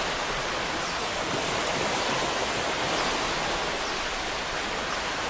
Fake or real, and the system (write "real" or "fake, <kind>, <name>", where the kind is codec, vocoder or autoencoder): real